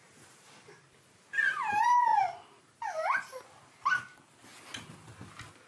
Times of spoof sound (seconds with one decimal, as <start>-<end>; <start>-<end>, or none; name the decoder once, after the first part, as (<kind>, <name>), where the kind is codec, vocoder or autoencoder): none